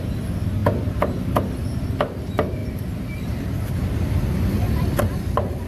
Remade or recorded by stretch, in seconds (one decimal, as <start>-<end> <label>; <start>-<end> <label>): 0.0-5.7 recorded